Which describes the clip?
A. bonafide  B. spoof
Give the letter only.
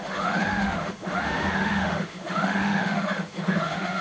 B